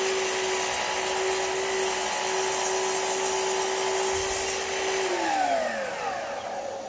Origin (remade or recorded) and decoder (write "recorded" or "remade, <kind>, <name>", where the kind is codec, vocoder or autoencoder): recorded